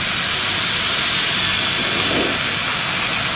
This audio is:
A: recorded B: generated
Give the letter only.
A